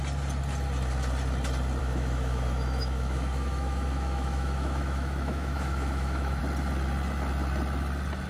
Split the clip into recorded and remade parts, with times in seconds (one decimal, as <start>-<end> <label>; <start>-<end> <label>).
0.0-1.8 recorded; 1.8-6.4 remade; 6.4-8.3 recorded